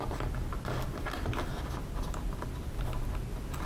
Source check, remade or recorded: recorded